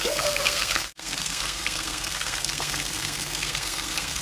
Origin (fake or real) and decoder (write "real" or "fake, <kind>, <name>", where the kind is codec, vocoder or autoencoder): fake, codec, SNAC